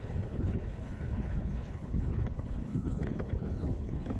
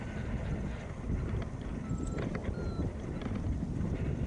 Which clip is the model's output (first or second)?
first